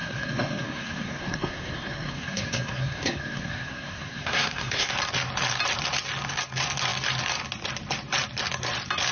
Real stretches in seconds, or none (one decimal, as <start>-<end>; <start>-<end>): 4.9-9.1